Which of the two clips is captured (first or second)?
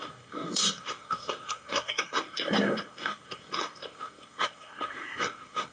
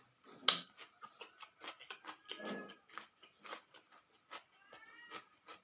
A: second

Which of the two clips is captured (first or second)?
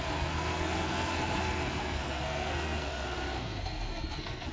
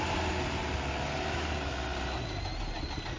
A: second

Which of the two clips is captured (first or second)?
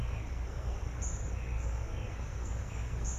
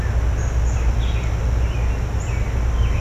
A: second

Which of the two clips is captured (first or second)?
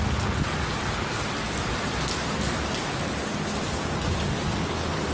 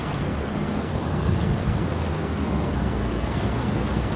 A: first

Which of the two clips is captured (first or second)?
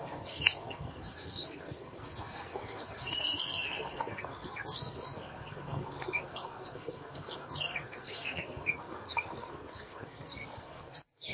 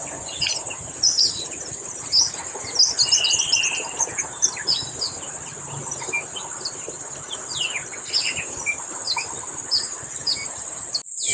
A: second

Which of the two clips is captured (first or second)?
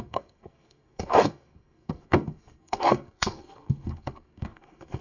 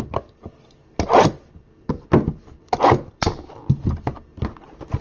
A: second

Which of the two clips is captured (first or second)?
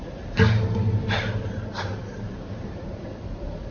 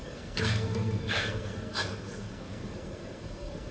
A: first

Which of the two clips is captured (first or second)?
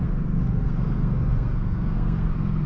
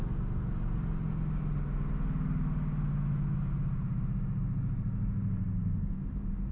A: second